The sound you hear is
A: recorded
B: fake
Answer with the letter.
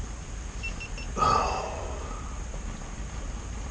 A